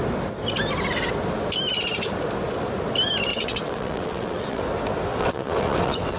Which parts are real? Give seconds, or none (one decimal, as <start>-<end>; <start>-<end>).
0.0-3.3; 4.6-5.2